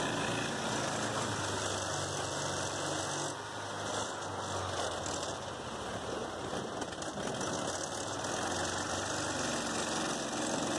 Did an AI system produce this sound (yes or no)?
no